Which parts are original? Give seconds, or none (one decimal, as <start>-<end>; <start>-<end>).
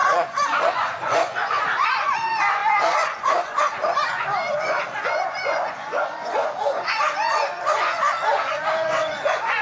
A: none